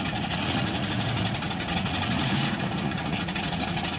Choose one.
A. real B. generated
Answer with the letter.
B